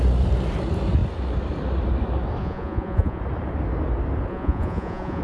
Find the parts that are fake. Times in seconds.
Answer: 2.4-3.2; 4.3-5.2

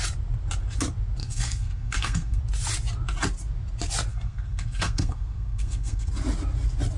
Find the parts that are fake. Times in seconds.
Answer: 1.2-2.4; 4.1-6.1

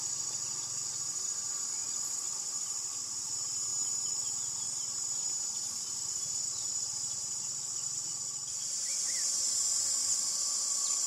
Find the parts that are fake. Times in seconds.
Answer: none

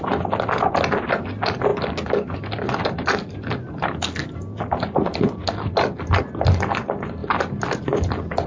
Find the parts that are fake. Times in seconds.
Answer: none

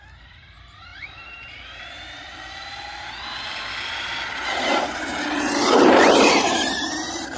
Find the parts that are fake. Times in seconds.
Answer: 0.0-0.9; 4.6-5.1; 5.8-7.4

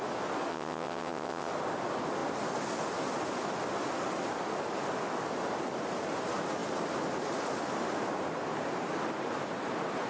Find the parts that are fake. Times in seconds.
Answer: 0.5-1.5